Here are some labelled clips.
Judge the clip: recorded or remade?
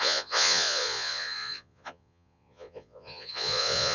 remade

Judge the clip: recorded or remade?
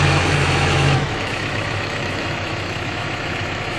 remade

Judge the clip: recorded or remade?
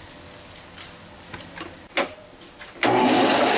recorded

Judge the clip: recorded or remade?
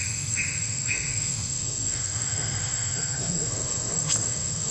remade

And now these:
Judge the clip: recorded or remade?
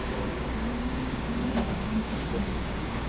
remade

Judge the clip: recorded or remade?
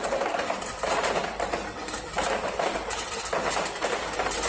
recorded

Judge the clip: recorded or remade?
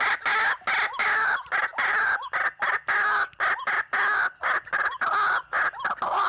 recorded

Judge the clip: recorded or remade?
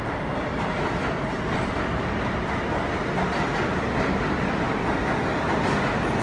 recorded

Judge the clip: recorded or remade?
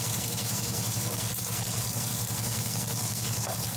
remade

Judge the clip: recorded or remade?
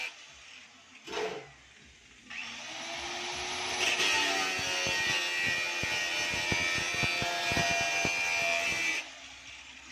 recorded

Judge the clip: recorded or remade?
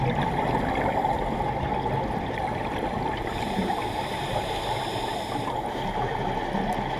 recorded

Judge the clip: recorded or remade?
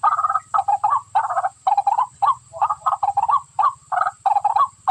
recorded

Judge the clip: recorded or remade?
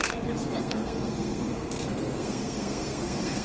remade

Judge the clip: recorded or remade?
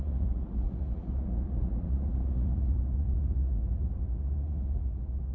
remade